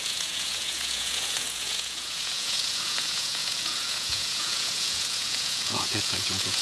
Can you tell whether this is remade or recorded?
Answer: remade